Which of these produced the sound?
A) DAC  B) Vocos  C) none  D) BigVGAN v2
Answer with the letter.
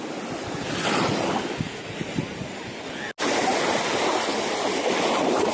C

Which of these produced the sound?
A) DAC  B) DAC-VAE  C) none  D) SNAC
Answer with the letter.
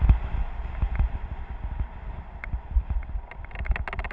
C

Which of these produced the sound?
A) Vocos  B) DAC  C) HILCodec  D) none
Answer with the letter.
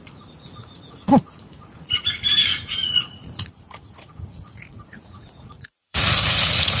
A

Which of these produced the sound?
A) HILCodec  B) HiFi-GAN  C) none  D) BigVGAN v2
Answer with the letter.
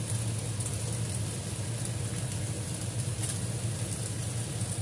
C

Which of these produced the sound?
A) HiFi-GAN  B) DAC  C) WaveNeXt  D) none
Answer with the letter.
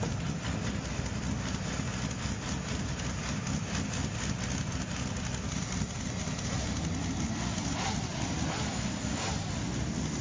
D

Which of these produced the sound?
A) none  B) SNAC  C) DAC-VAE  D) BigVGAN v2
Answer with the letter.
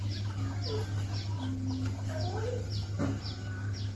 A